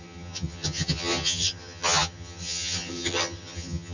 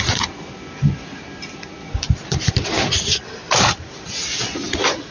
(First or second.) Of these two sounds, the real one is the second